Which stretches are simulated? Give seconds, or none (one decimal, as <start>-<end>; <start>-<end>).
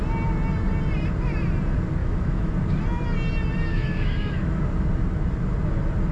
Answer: 2.0-2.5; 3.7-4.6